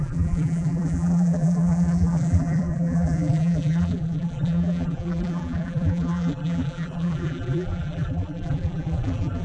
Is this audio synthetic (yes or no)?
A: yes